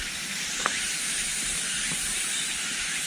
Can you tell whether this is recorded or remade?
recorded